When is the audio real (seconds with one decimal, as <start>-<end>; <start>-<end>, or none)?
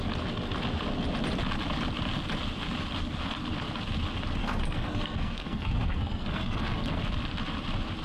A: 0.0-4.4; 7.0-8.0